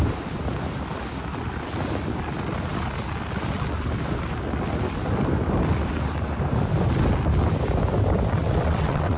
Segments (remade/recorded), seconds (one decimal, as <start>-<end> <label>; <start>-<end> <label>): 0.0-8.4 recorded; 8.4-9.2 remade